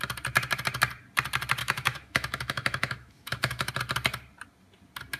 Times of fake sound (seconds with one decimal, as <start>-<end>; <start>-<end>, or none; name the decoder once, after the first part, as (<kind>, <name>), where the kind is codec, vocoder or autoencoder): 1.6-3.7 (autoencoder, DAC-VAE)